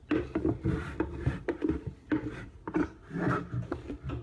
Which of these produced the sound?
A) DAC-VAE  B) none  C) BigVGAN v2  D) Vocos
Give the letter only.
B